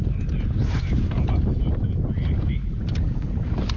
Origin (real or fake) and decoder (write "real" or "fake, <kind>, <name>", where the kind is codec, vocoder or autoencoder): fake, vocoder, BigVGAN v2